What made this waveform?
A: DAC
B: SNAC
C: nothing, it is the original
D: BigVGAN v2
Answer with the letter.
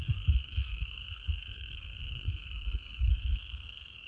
B